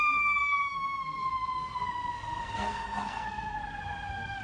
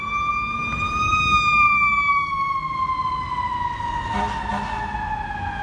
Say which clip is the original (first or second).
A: second